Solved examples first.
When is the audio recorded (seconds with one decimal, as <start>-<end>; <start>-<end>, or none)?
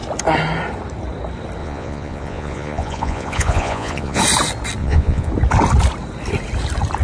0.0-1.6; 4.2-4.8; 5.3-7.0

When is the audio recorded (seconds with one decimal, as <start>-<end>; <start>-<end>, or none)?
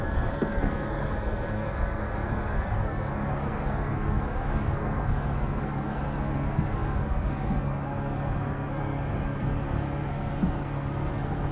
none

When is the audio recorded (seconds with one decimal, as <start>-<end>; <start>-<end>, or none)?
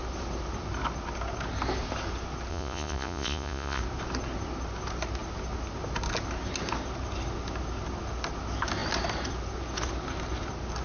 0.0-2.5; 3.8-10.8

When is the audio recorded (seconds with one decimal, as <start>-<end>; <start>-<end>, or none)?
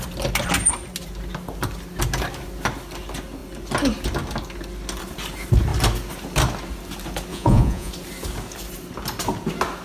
0.0-7.3; 7.9-9.8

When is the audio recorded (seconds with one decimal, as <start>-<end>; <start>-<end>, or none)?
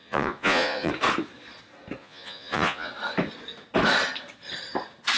0.9-2.0; 2.9-5.2